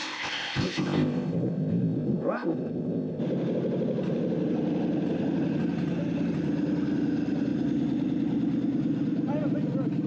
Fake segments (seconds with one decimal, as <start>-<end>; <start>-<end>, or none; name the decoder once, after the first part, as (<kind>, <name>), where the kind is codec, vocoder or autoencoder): 0.0-3.2 (codec, ZipCodec)